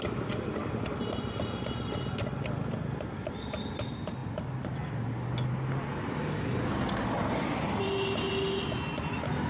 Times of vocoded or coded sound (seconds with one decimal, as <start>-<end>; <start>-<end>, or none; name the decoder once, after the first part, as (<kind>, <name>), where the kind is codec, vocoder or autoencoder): none